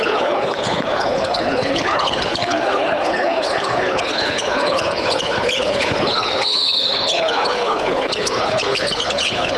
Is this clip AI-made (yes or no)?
yes